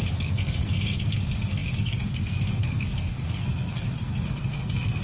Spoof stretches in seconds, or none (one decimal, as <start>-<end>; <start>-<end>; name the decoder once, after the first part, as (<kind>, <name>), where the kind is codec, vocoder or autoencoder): 0.0-5.0 (codec, SNAC)